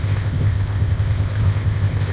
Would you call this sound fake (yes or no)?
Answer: yes